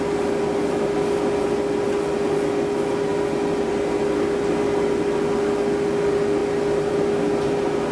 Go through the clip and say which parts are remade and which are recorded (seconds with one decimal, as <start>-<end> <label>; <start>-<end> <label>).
0.0-7.9 recorded